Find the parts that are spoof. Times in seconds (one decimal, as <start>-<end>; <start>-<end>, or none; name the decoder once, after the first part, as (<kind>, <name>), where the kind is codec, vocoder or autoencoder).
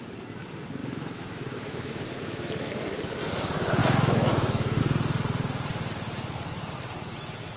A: 0.8-2.7 (autoencoder, DAC-VAE); 3.8-4.8